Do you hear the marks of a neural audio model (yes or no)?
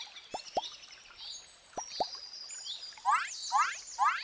no